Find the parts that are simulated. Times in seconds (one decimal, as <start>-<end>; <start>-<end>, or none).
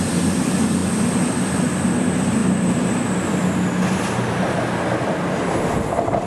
none